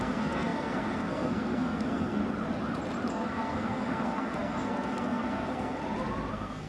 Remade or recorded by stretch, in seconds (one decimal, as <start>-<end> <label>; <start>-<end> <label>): 0.0-2.2 remade; 2.2-3.1 recorded; 3.1-5.8 remade; 5.8-6.3 recorded; 6.3-6.7 remade

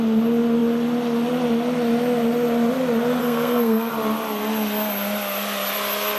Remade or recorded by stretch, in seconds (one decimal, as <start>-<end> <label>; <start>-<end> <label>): 0.0-3.2 recorded; 3.2-3.9 remade; 3.9-6.2 recorded